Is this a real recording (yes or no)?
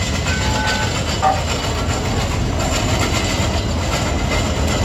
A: yes